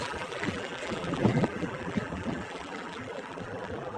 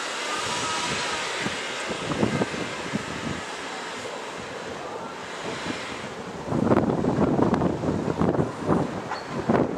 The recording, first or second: second